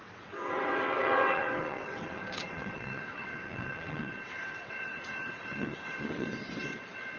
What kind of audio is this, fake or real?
fake